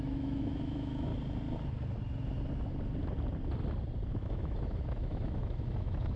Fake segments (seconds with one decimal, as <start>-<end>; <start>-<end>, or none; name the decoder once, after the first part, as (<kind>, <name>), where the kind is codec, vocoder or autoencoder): 0.0-1.1 (autoencoder, DAC-VAE); 4.1-6.2